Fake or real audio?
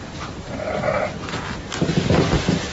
fake